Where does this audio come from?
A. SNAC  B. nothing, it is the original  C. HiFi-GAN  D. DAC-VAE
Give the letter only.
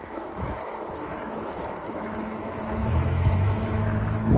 D